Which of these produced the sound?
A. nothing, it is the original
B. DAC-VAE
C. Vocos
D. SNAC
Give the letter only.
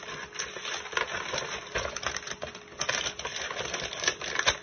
A